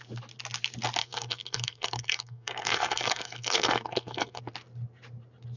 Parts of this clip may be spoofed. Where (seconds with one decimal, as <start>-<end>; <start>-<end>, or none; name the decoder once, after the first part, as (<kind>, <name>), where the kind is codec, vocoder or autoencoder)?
1.0-4.4 (codec, SNAC)